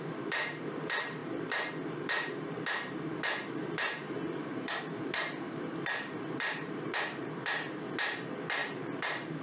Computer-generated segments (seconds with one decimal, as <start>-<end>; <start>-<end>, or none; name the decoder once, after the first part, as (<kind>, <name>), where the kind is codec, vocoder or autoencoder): 0.0-9.4 (vocoder, BigVGAN v2)